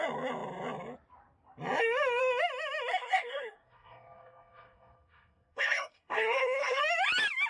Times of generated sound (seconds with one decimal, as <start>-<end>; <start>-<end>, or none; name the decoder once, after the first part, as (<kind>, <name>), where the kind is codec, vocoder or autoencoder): 2.9-6.8 (codec, SNAC)